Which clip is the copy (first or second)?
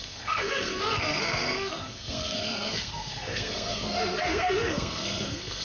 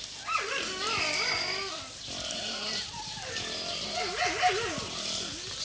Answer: first